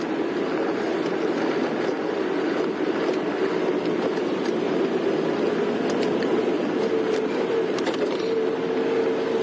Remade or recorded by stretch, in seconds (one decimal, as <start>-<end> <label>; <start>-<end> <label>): 0.0-0.9 recorded; 0.9-4.7 remade; 4.7-9.4 recorded